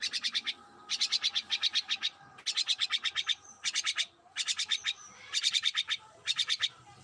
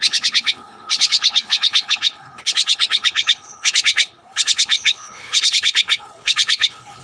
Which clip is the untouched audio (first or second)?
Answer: first